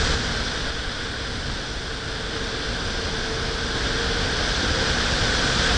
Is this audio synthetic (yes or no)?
no